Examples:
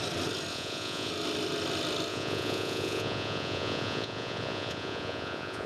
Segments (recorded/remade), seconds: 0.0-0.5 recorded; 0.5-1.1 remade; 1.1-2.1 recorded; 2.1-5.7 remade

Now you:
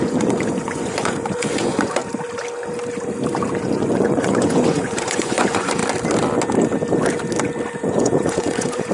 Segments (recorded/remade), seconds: 0.0-2.0 remade; 2.0-3.7 recorded; 3.7-5.8 remade; 5.8-7.8 recorded; 7.8-8.9 remade

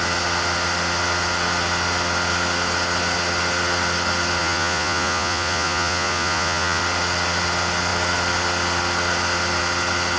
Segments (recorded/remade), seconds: 0.0-4.4 recorded; 4.4-6.8 remade; 6.8-10.2 recorded

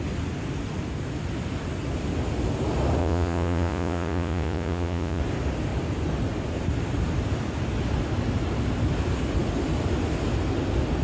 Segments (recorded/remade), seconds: 0.0-3.0 recorded; 3.0-5.2 remade; 5.2-11.0 recorded